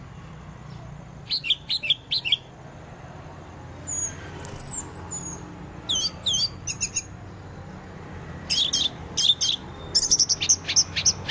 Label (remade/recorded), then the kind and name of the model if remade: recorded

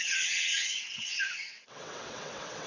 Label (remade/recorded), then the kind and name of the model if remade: remade, vocoder, WaveNeXt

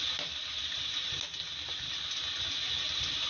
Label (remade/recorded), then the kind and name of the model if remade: recorded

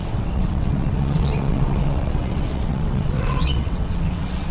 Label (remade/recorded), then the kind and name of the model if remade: remade, vocoder, WaveNeXt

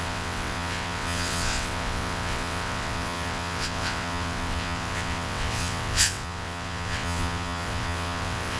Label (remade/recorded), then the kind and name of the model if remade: remade, vocoder, WaveNeXt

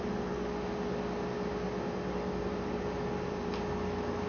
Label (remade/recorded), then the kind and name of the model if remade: recorded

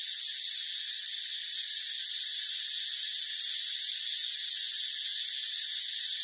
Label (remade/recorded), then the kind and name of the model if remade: recorded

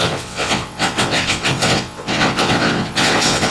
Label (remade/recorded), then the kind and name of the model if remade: remade, vocoder, WaveNeXt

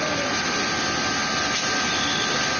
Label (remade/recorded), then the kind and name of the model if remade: recorded